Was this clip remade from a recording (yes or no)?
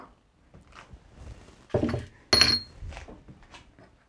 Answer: no